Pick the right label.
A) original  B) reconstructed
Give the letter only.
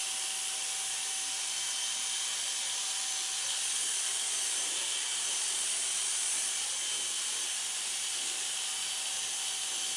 A